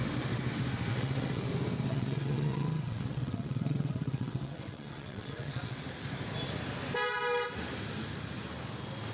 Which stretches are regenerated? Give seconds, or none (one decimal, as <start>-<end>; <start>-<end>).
0.9-1.5; 1.9-5.8